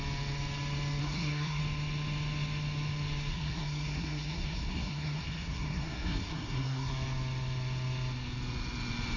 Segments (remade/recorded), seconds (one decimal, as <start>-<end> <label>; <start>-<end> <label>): 0.0-1.0 recorded; 1.0-1.6 remade; 1.6-3.3 recorded; 3.3-6.9 remade; 6.9-9.2 recorded

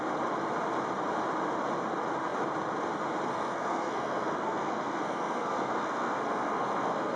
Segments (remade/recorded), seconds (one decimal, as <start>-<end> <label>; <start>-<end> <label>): 0.0-3.3 recorded; 3.3-7.2 remade

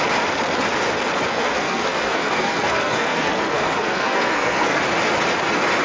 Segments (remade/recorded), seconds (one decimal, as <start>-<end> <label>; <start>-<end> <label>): 0.0-1.3 recorded; 1.3-4.8 remade; 4.8-5.8 recorded

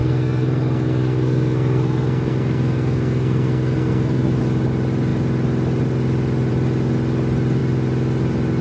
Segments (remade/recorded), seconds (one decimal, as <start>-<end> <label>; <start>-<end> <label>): 0.0-4.4 remade; 4.4-8.6 recorded

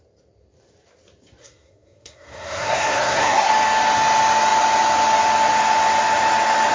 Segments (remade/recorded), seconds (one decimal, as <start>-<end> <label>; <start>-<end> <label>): 0.0-1.4 recorded; 1.4-3.5 remade; 3.5-6.7 recorded

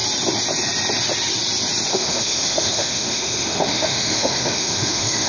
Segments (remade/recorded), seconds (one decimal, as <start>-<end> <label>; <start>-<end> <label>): 0.0-1.9 recorded; 1.9-5.3 remade

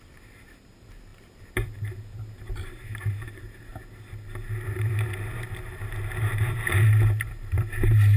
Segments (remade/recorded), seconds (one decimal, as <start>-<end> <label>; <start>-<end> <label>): 0.0-3.7 remade; 3.7-4.7 recorded; 4.7-8.2 remade